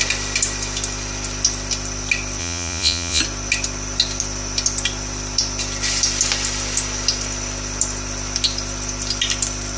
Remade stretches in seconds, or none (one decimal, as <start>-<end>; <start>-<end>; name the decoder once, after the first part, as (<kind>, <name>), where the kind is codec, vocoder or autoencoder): 2.4-3.2 (vocoder, Vocos)